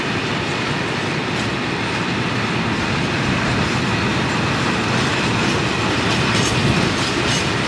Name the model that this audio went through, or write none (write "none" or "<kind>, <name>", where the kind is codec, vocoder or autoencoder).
none